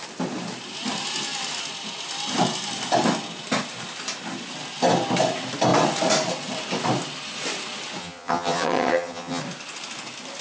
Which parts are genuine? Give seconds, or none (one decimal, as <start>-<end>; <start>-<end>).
0.0-8.0; 9.4-10.4